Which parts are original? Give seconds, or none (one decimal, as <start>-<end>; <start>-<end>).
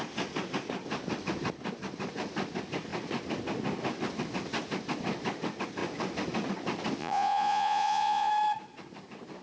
0.0-7.0; 8.3-9.4